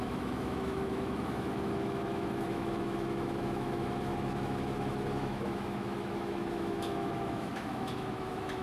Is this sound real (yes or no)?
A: no